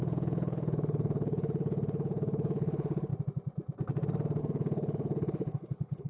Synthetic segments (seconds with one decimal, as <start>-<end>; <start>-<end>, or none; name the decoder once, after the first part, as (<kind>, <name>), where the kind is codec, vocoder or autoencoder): 0.0-3.1 (codec, HILCodec); 4.4-6.1